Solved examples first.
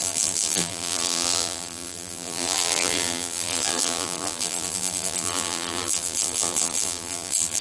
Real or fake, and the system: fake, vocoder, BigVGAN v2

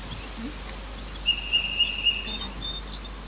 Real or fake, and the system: real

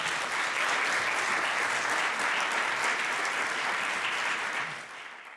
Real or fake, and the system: real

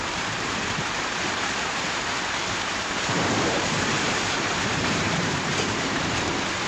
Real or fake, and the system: fake, vocoder, BigVGAN v2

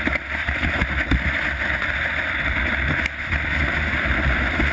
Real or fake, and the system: real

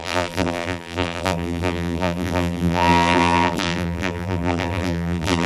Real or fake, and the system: fake, vocoder, BigVGAN v2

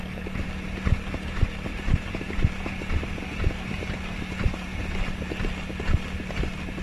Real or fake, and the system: real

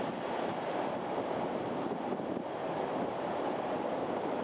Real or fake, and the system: fake, vocoder, BigVGAN v2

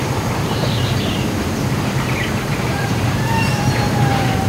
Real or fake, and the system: fake, vocoder, BigVGAN v2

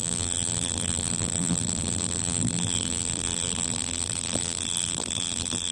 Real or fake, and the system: fake, vocoder, BigVGAN v2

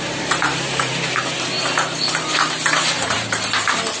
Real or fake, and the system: fake, vocoder, BigVGAN v2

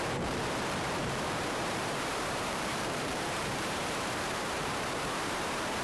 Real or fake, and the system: fake, vocoder, BigVGAN v2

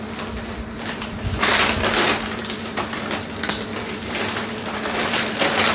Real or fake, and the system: fake, vocoder, BigVGAN v2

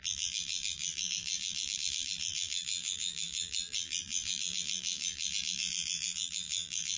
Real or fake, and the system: fake, vocoder, BigVGAN v2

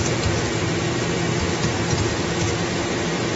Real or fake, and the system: real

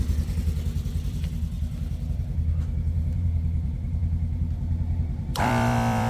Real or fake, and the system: fake, vocoder, BigVGAN v2